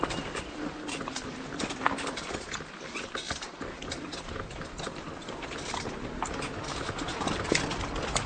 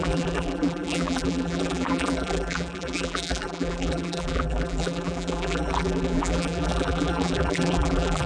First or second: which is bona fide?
first